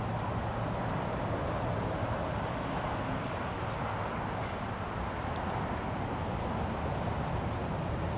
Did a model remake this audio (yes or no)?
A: no